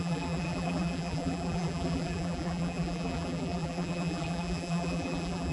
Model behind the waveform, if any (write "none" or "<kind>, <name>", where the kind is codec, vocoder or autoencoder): vocoder, BigVGAN v2